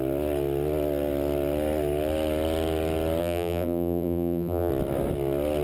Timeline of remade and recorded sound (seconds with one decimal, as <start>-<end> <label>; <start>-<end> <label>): 0.0-3.2 recorded; 3.2-4.7 remade; 4.7-5.6 recorded